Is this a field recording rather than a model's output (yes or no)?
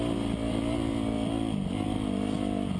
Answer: yes